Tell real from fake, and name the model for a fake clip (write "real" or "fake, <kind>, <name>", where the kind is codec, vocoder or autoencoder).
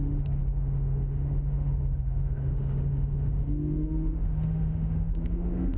fake, autoencoder, DAC-VAE